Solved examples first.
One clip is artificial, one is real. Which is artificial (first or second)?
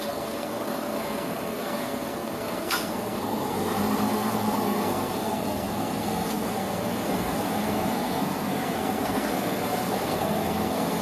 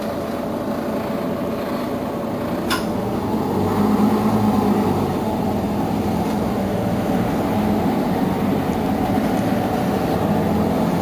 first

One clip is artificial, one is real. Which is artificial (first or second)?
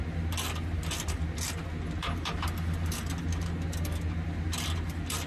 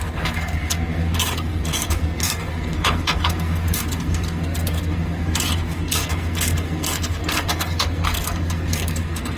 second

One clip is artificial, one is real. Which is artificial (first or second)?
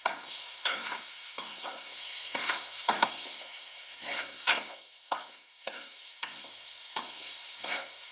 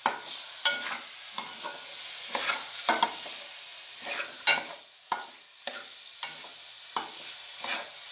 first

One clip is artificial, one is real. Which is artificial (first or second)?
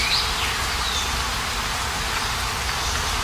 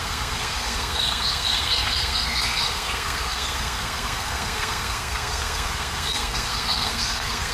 second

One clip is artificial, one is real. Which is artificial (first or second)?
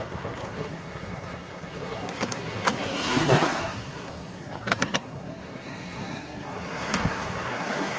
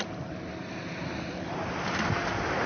first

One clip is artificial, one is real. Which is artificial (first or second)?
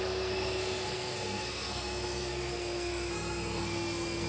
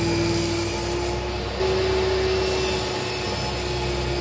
first